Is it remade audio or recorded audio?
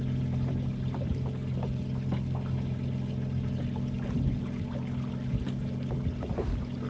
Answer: recorded